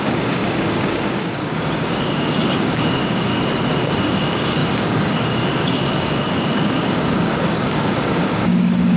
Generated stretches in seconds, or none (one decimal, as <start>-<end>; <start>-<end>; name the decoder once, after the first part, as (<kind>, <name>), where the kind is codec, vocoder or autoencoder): 0.0-3.3 (codec, DAC); 3.9-9.0